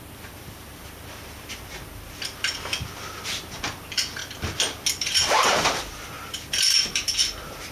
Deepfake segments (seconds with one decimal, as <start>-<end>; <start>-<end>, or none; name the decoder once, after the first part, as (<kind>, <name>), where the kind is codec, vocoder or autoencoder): 0.0-4.2 (vocoder, BigVGAN v2); 4.9-7.7